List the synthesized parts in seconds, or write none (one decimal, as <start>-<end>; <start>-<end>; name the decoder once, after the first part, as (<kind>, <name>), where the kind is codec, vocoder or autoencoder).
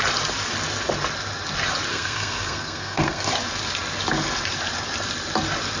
1.9-3.3 (codec, SNAC)